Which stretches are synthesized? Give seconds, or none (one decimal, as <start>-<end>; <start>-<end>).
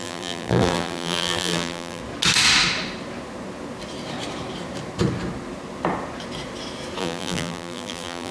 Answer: 0.0-2.0; 7.0-8.3